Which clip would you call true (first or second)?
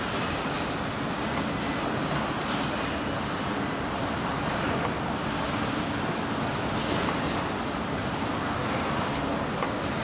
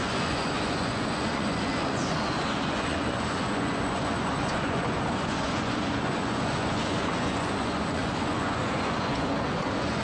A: first